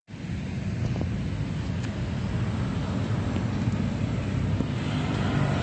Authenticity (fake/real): real